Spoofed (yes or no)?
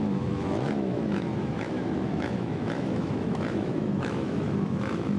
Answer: yes